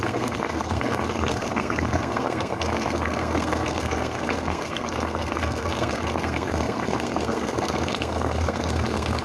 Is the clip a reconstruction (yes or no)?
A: yes